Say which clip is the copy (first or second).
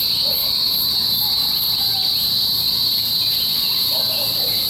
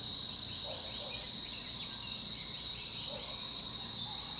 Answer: first